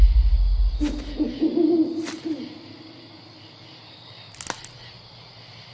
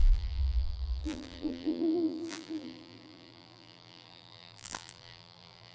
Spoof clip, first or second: second